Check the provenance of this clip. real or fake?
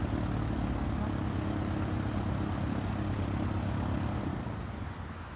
real